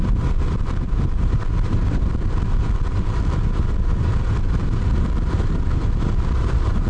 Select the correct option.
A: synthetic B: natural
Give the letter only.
A